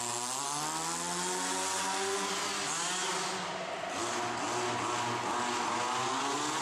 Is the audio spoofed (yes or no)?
no